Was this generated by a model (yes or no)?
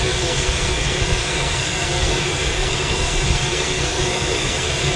yes